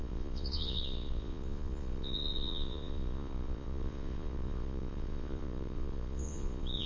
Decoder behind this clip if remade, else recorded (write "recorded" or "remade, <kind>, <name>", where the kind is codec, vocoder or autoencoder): remade, vocoder, Vocos